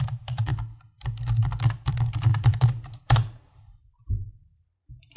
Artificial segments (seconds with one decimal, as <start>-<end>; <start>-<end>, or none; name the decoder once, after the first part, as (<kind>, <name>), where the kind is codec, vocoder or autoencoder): 0.0-0.5 (vocoder, BigVGAN v2); 1.9-5.2